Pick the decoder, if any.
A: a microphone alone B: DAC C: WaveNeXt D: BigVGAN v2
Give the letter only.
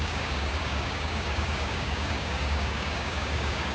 B